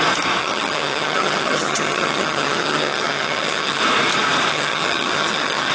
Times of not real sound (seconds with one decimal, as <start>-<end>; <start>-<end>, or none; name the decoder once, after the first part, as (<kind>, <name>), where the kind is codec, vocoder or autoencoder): 0.4-3.8 (vocoder, HiFi-GAN); 4.5-5.7